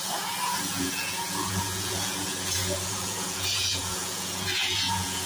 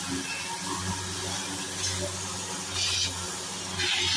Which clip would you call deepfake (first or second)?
first